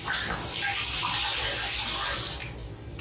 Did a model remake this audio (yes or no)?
no